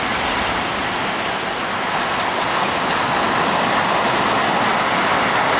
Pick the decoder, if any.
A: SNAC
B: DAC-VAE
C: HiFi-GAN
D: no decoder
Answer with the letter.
D